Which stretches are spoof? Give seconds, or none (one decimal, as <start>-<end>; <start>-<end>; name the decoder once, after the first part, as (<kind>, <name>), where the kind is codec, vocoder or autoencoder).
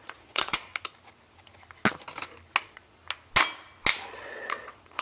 0.0-0.7 (vocoder, Vocos); 2.6-3.0; 4.1-5.0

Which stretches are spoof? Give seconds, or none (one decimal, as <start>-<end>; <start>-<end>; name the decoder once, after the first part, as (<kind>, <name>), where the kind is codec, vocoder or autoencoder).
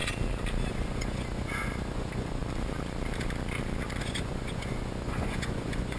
0.7-2.4 (vocoder, Vocos); 4.0-6.0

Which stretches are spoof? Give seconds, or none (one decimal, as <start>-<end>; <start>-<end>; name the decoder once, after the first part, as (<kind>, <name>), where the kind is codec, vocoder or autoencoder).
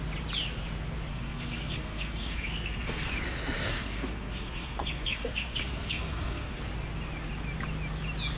1.1-3.1 (codec, SNAC); 3.7-6.6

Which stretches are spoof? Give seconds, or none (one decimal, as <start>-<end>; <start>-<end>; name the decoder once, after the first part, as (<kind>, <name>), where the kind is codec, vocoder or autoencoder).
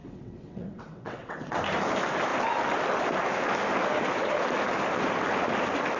0.0-1.6 (vocoder, WaveNeXt)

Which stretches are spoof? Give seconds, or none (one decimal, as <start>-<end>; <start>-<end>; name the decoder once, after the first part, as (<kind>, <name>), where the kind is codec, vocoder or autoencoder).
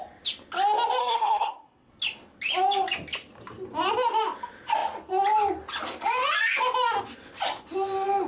1.0-1.9 (codec, SNAC)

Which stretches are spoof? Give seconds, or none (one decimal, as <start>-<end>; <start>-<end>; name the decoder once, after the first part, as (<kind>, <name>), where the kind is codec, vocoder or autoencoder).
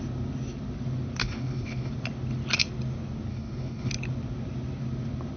1.2-1.9 (codec, HILCodec); 3.3-3.9